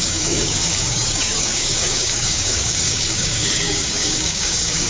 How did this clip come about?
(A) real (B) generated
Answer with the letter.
B